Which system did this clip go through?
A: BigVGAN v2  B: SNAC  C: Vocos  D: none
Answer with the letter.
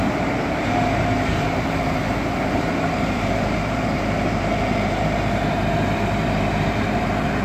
A